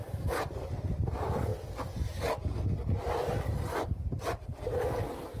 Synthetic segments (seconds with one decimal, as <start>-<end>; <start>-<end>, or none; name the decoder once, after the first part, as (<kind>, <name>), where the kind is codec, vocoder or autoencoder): 0.0-1.5 (vocoder, BigVGAN v2); 3.4-5.4